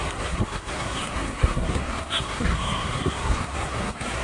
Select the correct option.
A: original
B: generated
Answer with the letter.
B